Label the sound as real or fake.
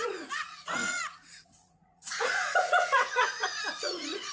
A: fake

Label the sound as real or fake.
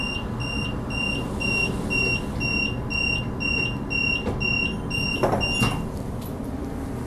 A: real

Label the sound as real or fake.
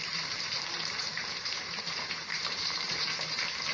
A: fake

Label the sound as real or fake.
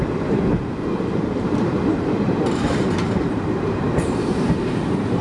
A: fake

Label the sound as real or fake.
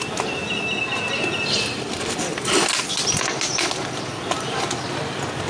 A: real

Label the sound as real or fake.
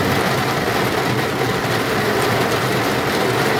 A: real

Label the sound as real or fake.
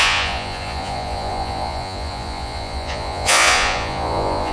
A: fake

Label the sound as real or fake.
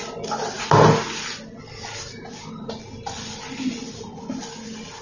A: real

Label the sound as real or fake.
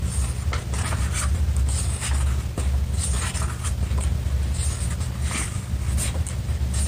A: real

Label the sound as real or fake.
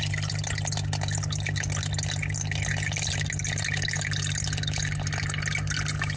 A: real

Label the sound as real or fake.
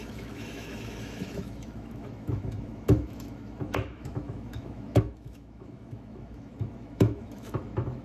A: fake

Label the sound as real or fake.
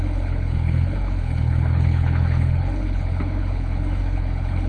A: fake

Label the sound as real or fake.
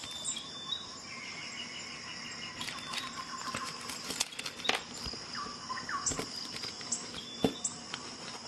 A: real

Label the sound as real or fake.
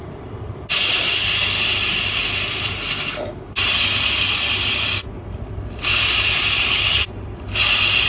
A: real